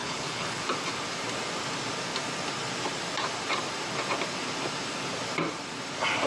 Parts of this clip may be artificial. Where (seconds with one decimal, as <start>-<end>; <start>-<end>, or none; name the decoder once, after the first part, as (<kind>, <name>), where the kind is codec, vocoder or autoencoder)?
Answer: 0.0-0.6 (codec, HILCodec)